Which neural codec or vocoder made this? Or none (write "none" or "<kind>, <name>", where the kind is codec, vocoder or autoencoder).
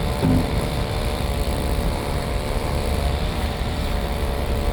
vocoder, BigVGAN v2